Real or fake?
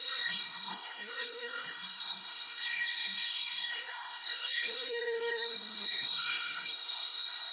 fake